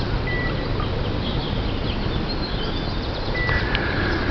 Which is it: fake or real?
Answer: real